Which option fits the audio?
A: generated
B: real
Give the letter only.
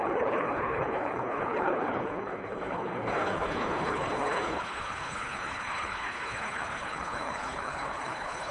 A